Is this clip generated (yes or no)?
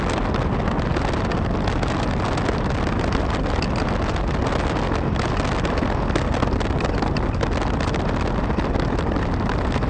no